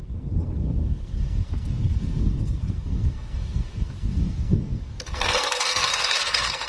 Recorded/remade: remade